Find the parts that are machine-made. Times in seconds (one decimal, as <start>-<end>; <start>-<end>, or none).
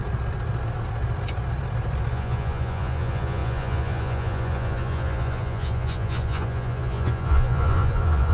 2.1-8.3